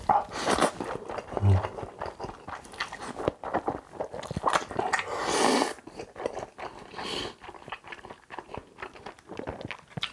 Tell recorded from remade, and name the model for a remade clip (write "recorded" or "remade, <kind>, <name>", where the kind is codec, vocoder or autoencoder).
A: recorded